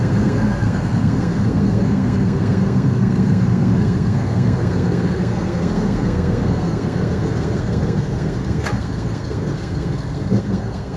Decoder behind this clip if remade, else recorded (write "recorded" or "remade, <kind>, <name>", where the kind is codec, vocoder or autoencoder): remade, codec, SNAC